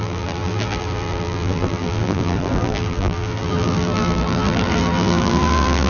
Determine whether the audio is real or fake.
fake